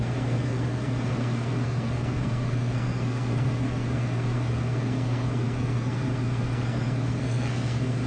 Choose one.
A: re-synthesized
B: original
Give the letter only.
A